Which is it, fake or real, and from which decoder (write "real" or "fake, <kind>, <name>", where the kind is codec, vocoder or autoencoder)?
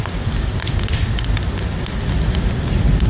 real